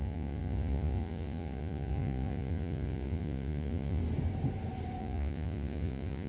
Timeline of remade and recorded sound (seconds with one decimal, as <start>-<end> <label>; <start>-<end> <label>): 0.0-4.0 remade; 4.0-5.0 recorded; 5.0-6.3 remade